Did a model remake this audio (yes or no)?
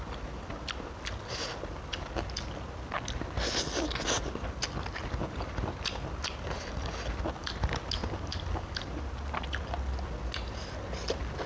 no